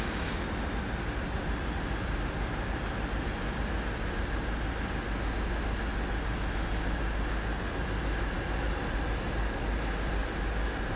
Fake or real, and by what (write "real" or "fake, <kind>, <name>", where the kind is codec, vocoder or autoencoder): real